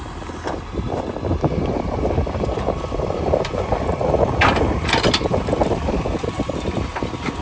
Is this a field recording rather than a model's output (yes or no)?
no